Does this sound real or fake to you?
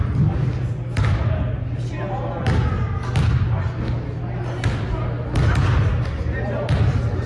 real